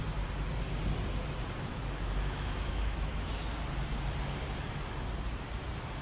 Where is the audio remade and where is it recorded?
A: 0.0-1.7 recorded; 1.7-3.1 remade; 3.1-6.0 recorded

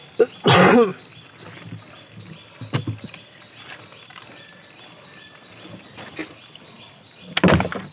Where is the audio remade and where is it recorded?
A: 0.0-7.9 recorded

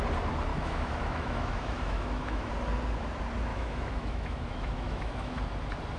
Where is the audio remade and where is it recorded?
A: 0.0-0.5 recorded; 0.5-2.5 remade; 2.5-3.5 recorded; 3.5-5.4 remade; 5.4-6.0 recorded

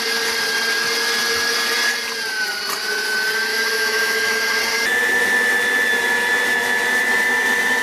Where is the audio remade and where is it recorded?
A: 0.0-3.5 recorded; 3.5-4.6 remade; 4.6-7.8 recorded